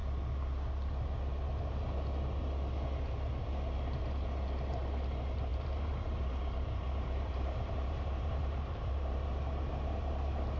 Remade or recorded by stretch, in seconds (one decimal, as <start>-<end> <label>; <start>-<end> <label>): 0.0-5.5 recorded; 5.5-9.3 remade; 9.3-10.6 recorded